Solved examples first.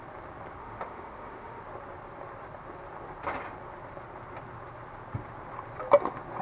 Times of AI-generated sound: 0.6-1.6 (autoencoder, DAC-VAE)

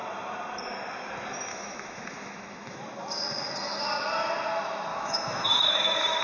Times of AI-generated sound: 1.5-2.8 (autoencoder, DAC-VAE); 4.9-6.2

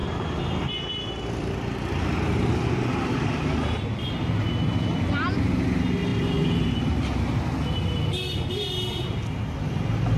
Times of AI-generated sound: none

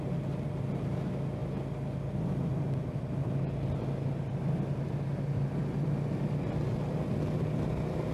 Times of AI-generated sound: none